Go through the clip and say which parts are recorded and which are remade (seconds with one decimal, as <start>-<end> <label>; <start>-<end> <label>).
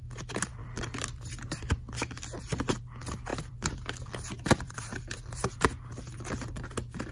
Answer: 0.0-0.6 recorded; 0.6-1.7 remade; 1.7-3.3 recorded; 3.3-5.5 remade; 5.5-7.1 recorded